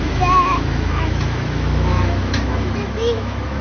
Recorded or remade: remade